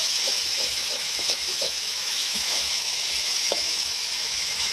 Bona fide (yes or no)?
no